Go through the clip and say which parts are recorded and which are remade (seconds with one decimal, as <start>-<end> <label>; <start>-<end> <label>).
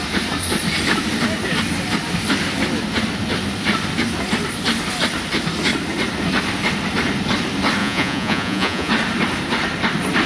0.0-7.8 recorded; 7.8-8.9 remade; 8.9-10.3 recorded